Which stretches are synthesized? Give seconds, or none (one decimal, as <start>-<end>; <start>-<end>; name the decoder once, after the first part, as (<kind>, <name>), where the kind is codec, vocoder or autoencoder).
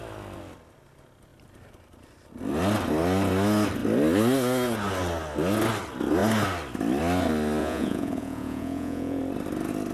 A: 7.6-9.2 (vocoder, Vocos)